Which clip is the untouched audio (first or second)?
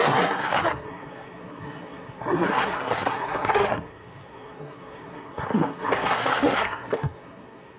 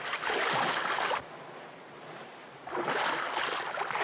second